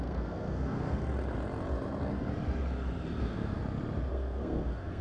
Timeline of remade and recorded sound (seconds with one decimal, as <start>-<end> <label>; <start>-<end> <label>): 0.0-1.0 remade; 1.0-3.2 recorded; 3.2-3.6 remade; 3.6-4.1 recorded; 4.1-5.0 remade